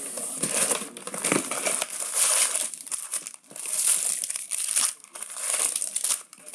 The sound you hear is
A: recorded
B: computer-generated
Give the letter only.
B